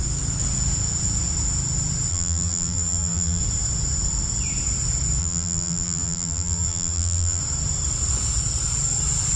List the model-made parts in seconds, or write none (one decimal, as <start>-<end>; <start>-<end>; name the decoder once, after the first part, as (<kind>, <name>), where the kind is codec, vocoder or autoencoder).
2.1-3.4 (vocoder, BigVGAN v2); 5.2-7.4